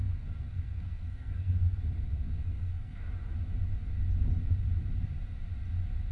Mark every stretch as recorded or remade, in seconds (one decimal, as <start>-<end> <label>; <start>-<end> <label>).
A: 0.0-3.0 remade; 3.0-6.1 recorded